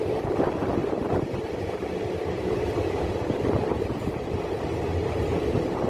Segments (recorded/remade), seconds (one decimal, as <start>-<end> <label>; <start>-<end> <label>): 0.0-0.8 recorded; 0.8-4.3 remade; 4.3-5.9 recorded